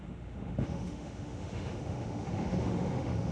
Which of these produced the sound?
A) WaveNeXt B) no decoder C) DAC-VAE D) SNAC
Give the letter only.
C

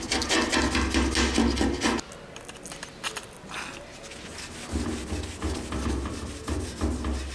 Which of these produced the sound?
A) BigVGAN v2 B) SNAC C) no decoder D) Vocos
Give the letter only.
C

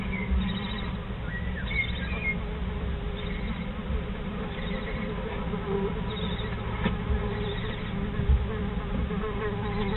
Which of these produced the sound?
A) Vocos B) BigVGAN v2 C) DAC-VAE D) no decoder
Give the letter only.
D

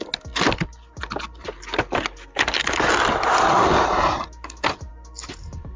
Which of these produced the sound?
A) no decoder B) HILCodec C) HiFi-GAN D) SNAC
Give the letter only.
A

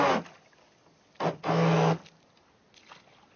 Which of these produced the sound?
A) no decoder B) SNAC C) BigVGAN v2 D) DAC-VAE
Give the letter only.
A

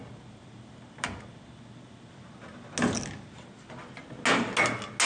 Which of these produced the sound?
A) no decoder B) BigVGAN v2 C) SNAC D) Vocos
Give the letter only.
A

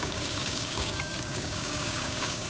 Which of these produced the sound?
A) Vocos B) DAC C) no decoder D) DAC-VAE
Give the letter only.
B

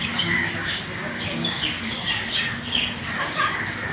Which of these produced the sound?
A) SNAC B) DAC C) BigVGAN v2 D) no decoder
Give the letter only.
B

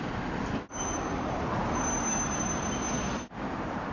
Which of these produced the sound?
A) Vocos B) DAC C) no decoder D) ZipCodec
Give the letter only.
C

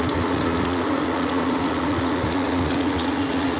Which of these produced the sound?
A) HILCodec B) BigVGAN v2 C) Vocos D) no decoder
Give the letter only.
C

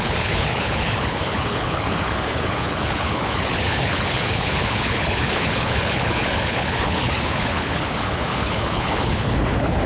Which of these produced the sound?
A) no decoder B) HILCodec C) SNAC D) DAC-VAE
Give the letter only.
B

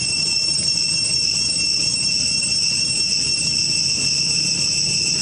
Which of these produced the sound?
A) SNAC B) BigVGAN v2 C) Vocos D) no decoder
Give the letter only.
D